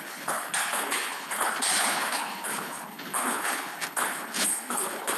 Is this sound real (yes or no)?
no